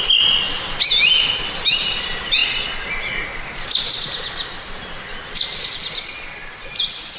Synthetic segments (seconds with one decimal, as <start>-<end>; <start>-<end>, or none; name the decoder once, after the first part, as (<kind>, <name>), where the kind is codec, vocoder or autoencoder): none